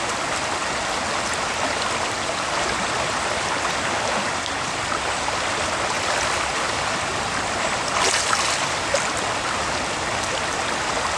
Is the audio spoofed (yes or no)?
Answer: no